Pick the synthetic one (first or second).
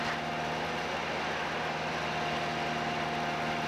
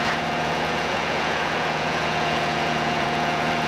second